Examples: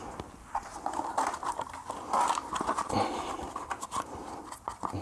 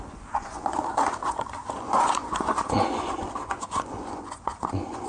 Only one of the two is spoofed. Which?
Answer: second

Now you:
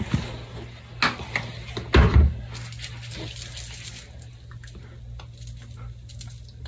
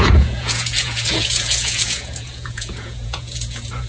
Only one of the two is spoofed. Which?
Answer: second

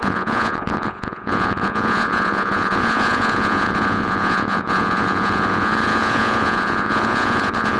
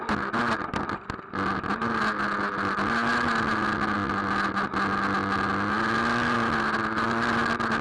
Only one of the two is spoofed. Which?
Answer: first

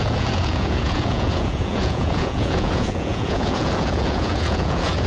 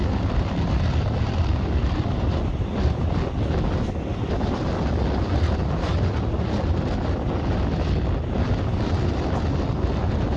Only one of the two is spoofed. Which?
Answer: first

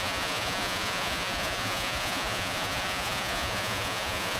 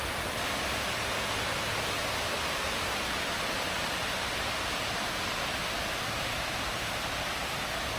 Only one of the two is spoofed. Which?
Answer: first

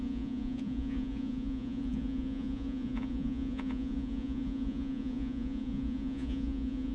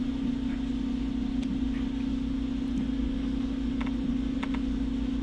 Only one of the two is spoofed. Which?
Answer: first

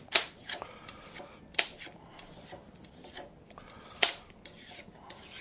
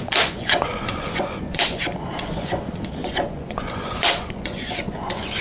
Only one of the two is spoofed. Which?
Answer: second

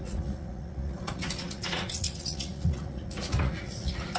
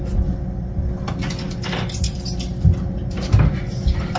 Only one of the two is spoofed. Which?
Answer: first